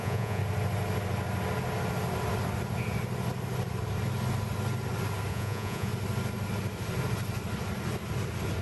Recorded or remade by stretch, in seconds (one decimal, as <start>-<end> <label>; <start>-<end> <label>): 0.0-0.4 remade; 0.4-5.3 recorded; 5.3-5.9 remade; 5.9-8.6 recorded